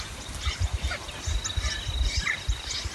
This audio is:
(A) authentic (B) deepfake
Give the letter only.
A